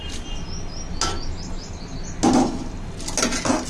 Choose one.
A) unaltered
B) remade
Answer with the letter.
A